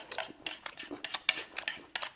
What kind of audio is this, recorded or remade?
recorded